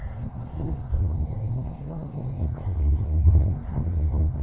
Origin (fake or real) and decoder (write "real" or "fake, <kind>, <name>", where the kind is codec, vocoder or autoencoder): fake, codec, SNAC